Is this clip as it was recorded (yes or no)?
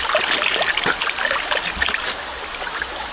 yes